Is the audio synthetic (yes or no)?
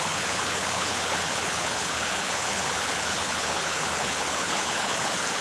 yes